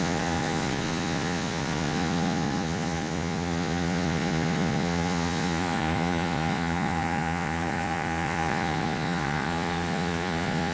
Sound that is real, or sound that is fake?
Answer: fake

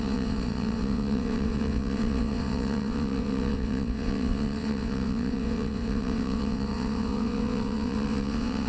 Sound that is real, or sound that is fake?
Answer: fake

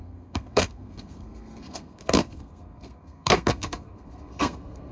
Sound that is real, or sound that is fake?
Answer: fake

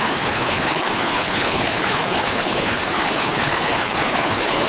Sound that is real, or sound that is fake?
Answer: fake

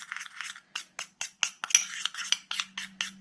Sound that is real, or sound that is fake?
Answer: real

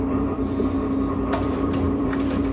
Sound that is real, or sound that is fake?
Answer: fake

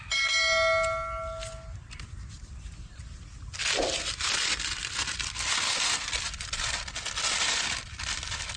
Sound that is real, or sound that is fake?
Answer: real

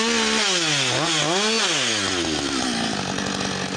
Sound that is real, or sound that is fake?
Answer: real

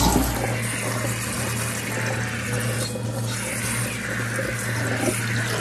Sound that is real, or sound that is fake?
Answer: real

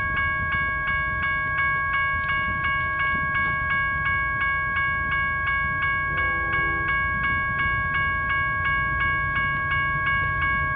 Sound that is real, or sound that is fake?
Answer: real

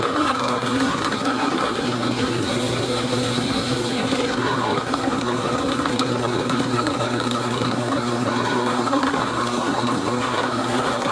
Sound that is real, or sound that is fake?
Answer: fake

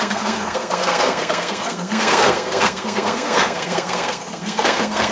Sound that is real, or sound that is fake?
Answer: fake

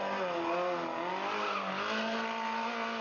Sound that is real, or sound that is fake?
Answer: real